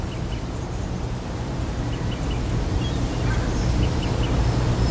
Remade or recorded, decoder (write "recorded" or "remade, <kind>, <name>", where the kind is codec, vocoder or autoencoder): recorded